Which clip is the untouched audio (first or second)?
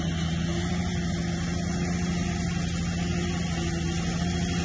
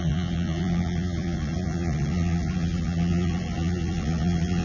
first